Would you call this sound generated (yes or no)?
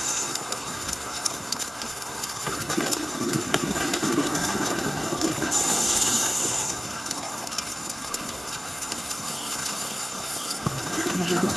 yes